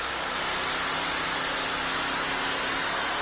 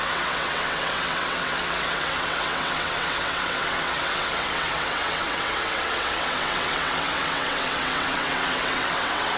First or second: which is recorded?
first